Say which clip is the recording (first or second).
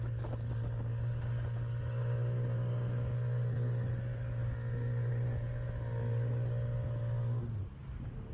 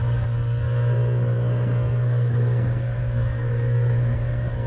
first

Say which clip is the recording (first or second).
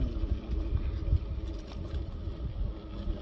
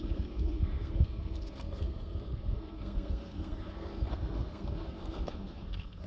first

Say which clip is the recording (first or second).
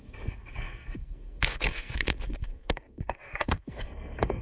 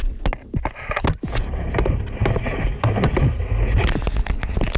second